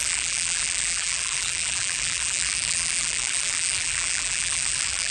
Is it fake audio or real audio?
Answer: fake